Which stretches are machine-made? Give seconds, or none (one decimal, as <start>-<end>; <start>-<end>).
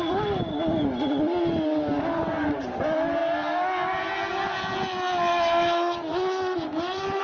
5.3-7.2